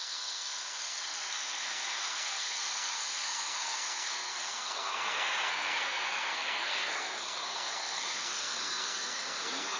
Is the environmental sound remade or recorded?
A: remade